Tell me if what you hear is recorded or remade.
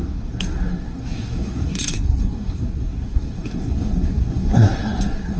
remade